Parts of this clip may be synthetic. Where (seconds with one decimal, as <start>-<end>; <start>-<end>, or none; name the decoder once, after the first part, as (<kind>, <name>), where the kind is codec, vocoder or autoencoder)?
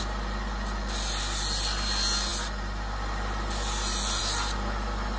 none